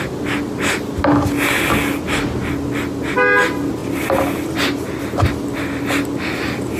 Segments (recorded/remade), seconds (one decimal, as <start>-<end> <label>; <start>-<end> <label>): 0.0-6.8 recorded